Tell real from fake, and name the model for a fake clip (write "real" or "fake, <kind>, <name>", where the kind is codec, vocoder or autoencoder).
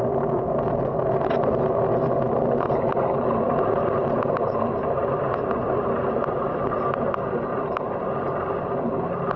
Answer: real